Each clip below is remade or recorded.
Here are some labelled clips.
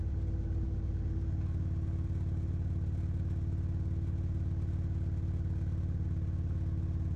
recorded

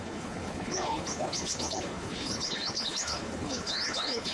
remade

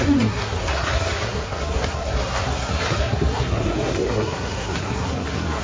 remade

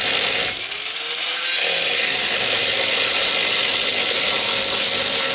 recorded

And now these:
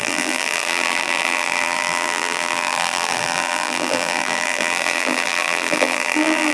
remade